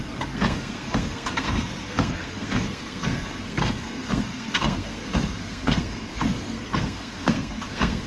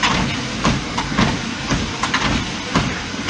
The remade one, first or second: first